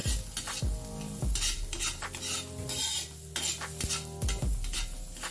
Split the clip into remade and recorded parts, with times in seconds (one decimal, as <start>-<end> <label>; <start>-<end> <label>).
0.0-5.3 recorded